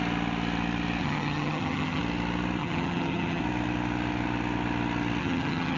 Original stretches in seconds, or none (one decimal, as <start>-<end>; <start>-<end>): 0.0-1.0; 2.0-2.6; 3.4-5.2